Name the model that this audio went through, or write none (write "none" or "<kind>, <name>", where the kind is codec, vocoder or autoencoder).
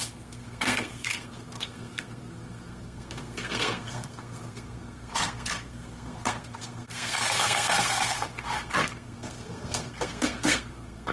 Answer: codec, SNAC